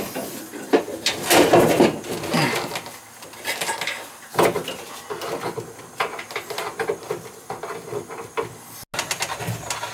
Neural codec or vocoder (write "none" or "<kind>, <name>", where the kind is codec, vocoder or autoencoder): none